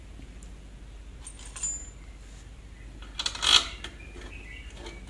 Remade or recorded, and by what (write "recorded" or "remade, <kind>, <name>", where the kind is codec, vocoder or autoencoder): recorded